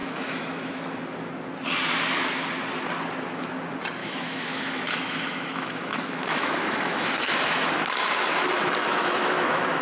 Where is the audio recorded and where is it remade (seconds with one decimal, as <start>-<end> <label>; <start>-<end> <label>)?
0.0-0.8 remade; 0.8-4.0 recorded; 4.0-7.7 remade; 7.7-8.8 recorded; 8.8-9.8 remade